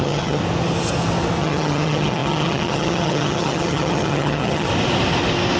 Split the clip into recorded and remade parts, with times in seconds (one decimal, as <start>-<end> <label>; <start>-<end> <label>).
0.0-0.4 remade; 0.4-1.4 recorded; 1.4-4.7 remade; 4.7-5.6 recorded